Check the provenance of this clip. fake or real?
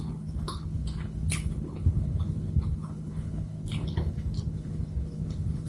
fake